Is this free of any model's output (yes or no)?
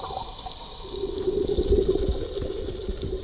yes